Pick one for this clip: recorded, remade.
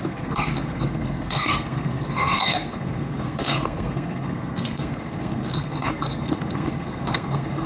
remade